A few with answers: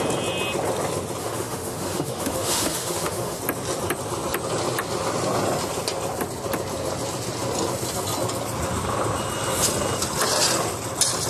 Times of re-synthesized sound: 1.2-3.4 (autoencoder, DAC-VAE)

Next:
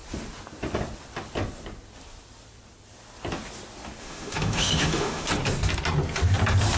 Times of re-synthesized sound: 4.0-5.3 (autoencoder, DAC-VAE)

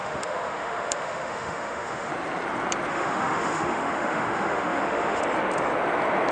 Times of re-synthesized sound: 0.0-2.1 (autoencoder, DAC-VAE); 2.9-5.2

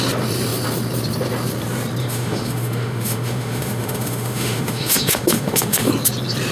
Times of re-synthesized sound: 2.0-5.9 (autoencoder, DAC-VAE)

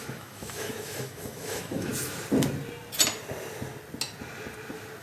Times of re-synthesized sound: 0.0-1.9 (autoencoder, DAC-VAE)

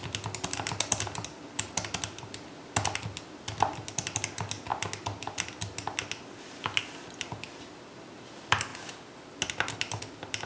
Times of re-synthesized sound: none

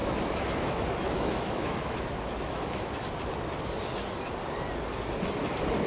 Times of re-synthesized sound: 0.0-3.1 (autoencoder, DAC-VAE)

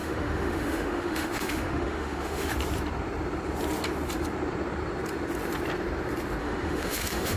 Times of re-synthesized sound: 0.0-2.5 (autoencoder, DAC-VAE); 6.4-7.4